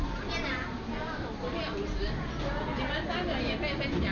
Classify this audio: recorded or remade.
recorded